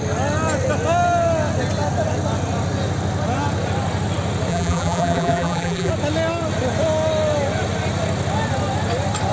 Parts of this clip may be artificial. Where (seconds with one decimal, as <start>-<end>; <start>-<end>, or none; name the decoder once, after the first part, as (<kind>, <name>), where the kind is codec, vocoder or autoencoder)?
4.5-5.9 (vocoder, BigVGAN v2)